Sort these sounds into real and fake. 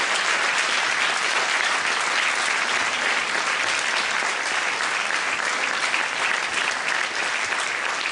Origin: real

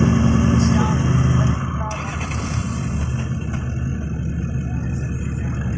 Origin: real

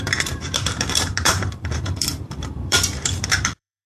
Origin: fake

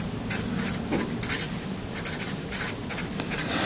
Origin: real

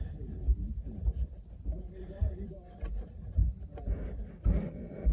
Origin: fake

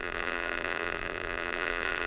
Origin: fake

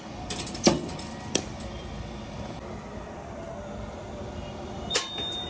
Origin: fake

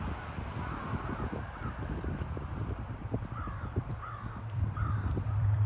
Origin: fake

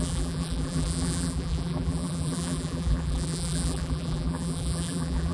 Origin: fake